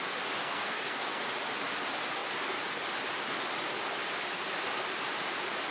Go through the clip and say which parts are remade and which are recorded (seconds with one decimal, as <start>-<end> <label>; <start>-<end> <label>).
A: 0.0-0.4 recorded; 0.4-1.2 remade; 1.2-5.7 recorded